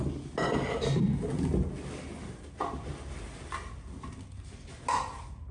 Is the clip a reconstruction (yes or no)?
no